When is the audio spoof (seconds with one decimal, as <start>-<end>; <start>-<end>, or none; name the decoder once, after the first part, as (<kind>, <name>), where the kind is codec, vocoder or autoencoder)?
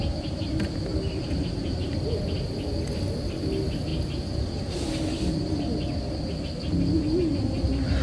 0.9-1.9 (vocoder, BigVGAN v2)